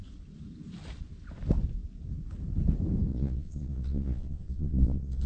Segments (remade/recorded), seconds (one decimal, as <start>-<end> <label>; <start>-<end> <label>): 0.0-3.1 recorded; 3.1-5.3 remade